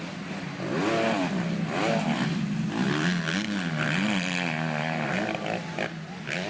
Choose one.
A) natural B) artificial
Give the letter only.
A